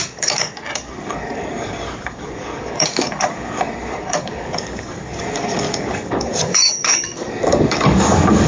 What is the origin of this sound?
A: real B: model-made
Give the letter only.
B